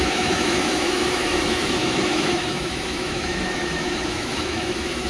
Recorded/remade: remade